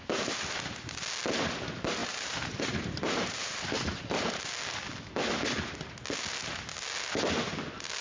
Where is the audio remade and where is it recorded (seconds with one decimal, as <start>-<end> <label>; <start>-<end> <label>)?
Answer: 0.0-1.0 remade; 1.0-2.0 recorded; 2.0-4.5 remade; 4.5-8.0 recorded